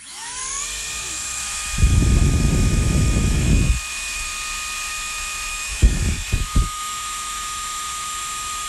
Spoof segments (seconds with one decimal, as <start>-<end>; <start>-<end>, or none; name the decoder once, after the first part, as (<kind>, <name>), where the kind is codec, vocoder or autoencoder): 0.0-0.4 (autoencoder, DAC-VAE); 1.0-4.3; 4.9-8.7